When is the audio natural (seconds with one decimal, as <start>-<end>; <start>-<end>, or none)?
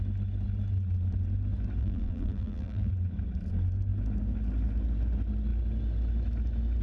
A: 0.0-1.8; 2.9-6.8